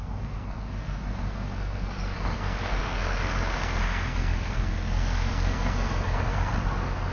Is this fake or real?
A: fake